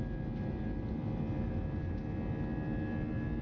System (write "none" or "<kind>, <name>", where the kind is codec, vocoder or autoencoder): none